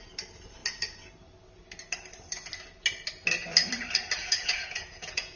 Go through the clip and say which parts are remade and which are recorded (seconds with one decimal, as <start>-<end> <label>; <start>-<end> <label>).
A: 0.0-4.2 recorded; 4.2-5.4 remade